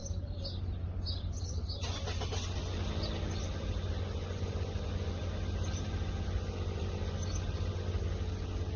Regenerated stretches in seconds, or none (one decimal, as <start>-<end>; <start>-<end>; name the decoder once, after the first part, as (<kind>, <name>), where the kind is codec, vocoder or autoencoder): none

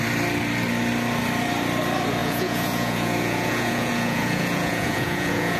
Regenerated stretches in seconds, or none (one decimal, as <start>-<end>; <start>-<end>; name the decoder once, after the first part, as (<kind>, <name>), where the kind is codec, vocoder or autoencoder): 2.2-5.6 (vocoder, Vocos)

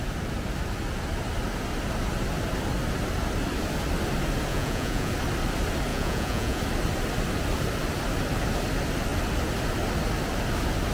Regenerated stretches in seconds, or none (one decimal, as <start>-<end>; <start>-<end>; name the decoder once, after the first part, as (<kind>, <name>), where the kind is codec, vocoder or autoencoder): 4.5-5.1 (vocoder, Vocos); 5.9-6.6

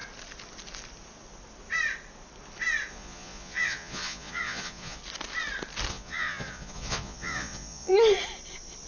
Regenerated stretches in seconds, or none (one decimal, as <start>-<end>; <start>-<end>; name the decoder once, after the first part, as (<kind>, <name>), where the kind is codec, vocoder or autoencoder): 2.9-5.0 (vocoder, Vocos); 5.9-7.9

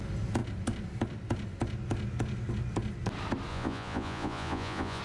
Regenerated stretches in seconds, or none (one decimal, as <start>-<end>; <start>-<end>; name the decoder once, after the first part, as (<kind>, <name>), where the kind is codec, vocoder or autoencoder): 3.5-5.0 (vocoder, Vocos)